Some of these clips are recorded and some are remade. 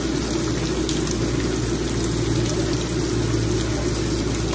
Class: recorded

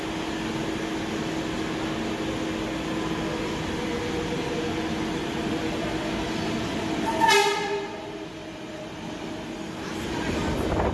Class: recorded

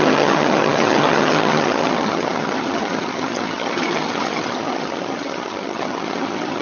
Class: remade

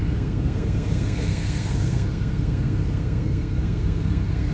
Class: remade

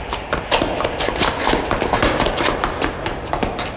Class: recorded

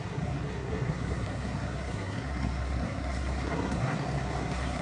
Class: remade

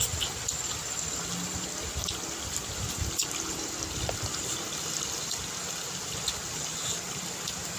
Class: recorded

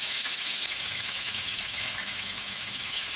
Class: remade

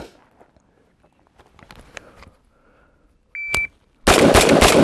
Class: recorded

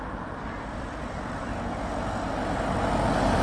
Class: recorded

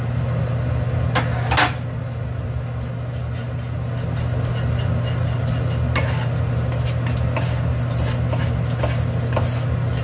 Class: recorded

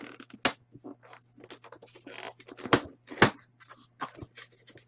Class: recorded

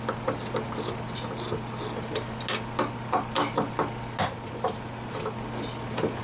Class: recorded